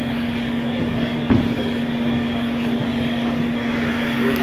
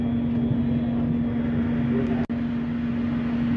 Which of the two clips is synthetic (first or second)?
first